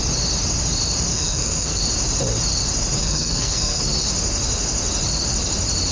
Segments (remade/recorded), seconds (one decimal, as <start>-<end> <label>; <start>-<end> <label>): 0.0-1.1 recorded; 1.1-1.8 remade; 1.8-3.0 recorded; 3.0-3.8 remade; 3.8-5.9 recorded